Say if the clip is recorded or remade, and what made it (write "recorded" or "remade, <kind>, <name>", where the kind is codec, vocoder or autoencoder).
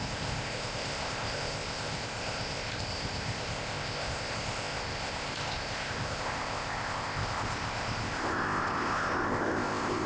remade, codec, ZipCodec